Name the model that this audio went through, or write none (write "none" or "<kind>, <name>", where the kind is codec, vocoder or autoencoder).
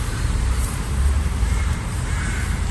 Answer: vocoder, BigVGAN v2